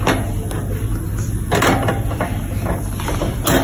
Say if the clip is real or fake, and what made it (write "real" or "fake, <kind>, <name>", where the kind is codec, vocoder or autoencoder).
real